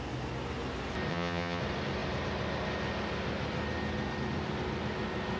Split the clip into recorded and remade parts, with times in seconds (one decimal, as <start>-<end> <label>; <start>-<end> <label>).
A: 0.0-1.1 recorded; 1.1-1.6 remade; 1.6-5.4 recorded